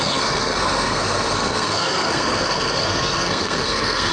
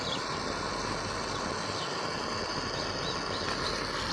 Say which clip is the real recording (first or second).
second